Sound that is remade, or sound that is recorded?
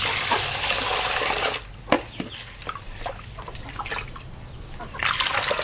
recorded